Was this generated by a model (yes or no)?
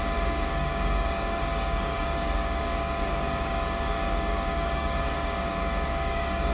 yes